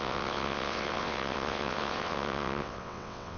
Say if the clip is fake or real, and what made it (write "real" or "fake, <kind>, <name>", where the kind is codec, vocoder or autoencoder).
fake, vocoder, WaveNeXt